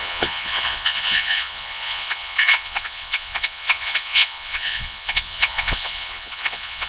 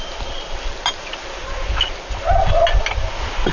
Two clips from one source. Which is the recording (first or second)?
second